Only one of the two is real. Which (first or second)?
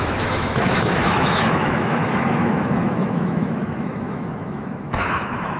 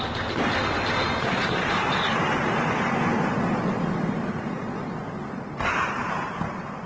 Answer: second